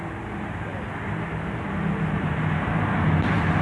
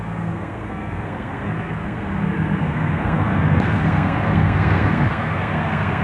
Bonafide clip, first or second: first